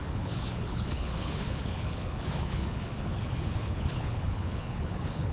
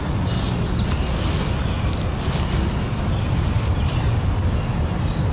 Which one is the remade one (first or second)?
first